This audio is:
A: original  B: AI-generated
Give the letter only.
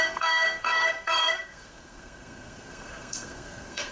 B